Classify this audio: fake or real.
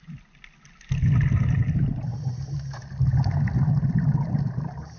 real